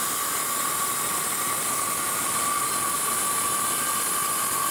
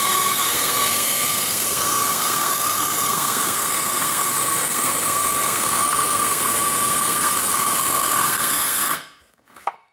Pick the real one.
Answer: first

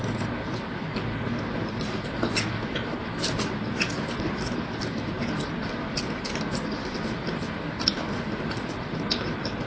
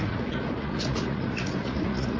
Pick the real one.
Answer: first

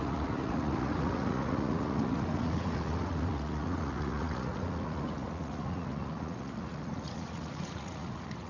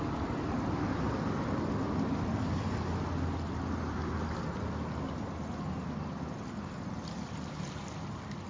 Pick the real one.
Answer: second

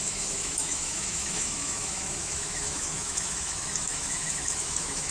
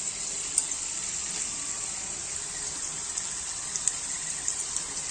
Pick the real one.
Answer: second